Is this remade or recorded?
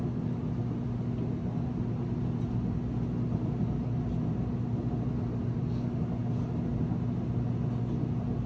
recorded